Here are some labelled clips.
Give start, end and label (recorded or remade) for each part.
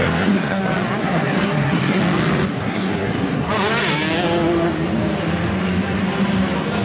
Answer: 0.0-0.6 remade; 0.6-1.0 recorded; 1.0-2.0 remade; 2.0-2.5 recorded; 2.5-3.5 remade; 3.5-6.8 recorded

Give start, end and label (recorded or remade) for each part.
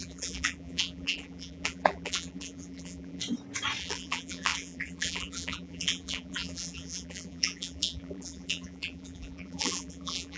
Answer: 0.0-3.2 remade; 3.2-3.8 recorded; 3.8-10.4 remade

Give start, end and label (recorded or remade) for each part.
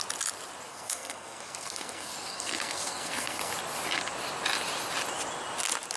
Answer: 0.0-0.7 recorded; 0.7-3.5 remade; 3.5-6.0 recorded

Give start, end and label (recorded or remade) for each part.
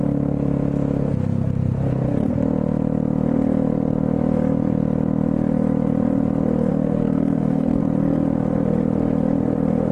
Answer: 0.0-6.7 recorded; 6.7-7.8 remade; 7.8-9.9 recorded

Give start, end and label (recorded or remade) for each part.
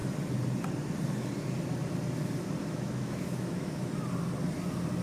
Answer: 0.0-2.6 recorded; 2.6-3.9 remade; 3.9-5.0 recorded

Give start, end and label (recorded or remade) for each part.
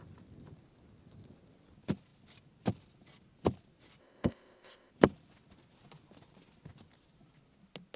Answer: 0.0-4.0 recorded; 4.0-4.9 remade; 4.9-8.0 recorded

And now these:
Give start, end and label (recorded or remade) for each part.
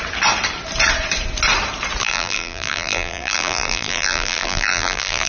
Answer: 0.0-2.0 recorded; 2.0-5.3 remade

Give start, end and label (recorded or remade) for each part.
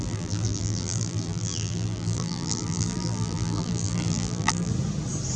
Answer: 0.0-4.7 remade; 4.7-5.4 recorded